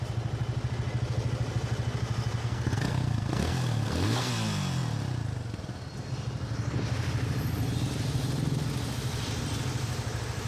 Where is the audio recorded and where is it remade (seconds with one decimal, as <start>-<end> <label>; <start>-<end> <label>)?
0.0-2.4 recorded; 2.4-4.3 remade; 4.3-10.5 recorded